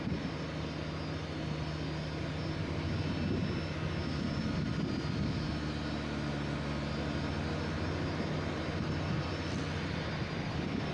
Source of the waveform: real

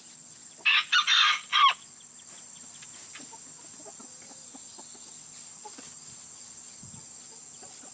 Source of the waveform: real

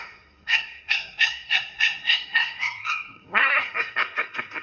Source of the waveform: fake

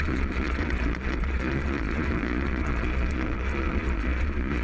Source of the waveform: fake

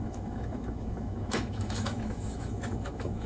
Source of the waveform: fake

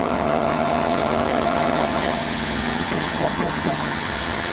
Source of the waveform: fake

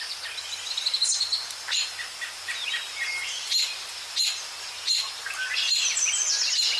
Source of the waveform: real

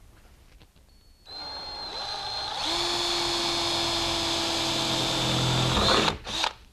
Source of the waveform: real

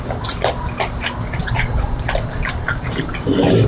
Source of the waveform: real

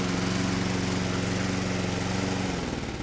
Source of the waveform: real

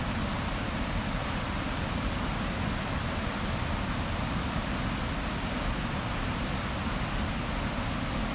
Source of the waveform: real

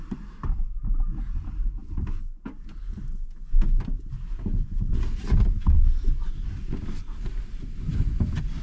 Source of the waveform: real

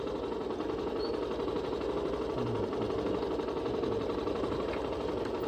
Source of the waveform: real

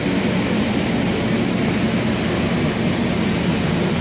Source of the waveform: real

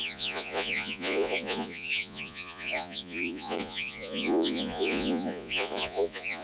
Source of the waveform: fake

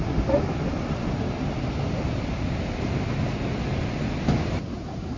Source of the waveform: real